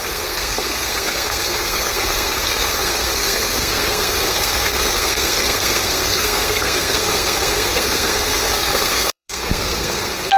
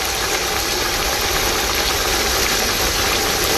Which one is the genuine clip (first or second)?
second